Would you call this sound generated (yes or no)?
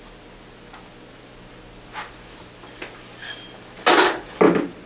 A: no